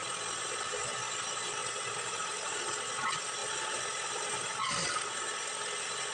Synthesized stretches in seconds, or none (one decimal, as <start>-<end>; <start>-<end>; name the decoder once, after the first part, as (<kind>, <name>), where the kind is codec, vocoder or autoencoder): none